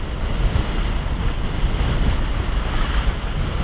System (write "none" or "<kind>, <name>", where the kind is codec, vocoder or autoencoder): none